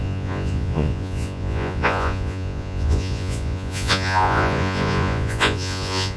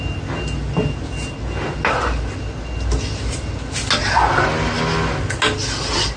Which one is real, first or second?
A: second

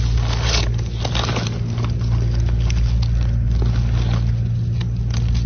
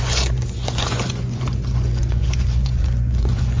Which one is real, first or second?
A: first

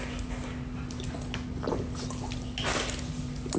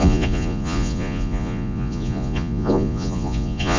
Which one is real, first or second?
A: first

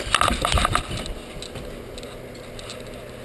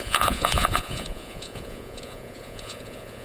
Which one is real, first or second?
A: first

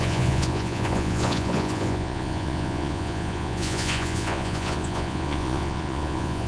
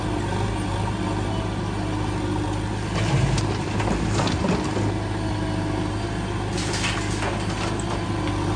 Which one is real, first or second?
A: second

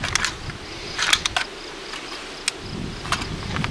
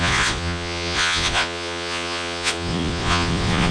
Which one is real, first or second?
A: first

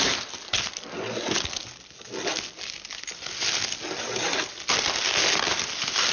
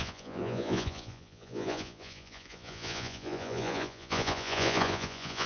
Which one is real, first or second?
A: first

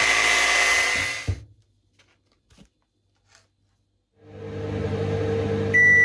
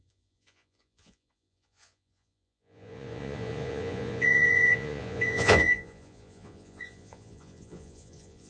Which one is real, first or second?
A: first